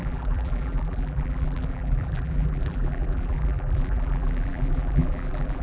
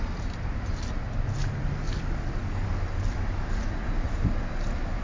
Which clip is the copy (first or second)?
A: first